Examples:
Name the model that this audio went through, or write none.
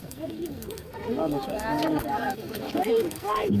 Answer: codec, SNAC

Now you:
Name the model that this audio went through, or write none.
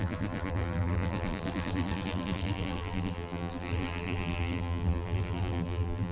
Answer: vocoder, BigVGAN v2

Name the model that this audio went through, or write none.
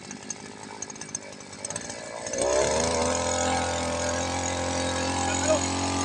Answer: none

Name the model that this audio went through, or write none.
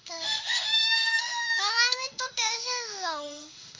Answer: autoencoder, DAC-VAE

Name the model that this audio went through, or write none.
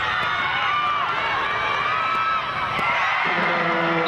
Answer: none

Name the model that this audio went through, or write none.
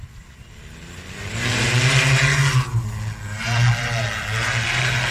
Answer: none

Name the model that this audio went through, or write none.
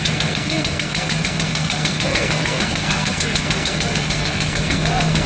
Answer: codec, SNAC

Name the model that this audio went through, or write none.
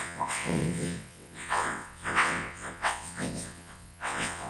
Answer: vocoder, WaveNeXt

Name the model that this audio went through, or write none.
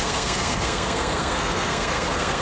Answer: codec, SNAC